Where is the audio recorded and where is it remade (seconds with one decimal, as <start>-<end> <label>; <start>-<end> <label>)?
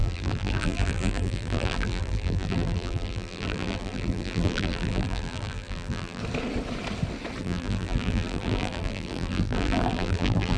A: 0.0-6.2 remade; 6.2-7.4 recorded; 7.4-10.6 remade